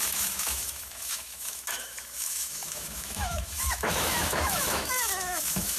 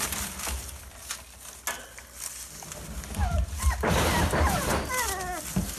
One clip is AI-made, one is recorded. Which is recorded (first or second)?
second